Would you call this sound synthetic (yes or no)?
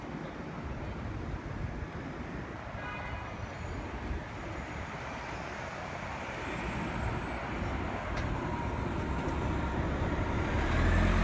no